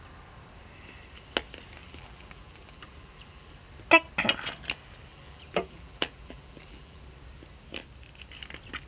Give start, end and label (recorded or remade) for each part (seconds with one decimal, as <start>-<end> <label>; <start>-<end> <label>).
0.0-1.8 recorded; 1.8-3.5 remade; 3.5-5.1 recorded; 5.1-7.0 remade; 7.0-8.9 recorded